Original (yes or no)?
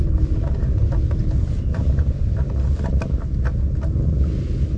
yes